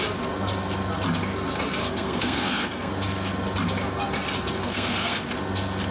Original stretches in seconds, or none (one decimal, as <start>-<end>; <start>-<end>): 0.0-1.8; 2.9-4.6; 5.2-5.9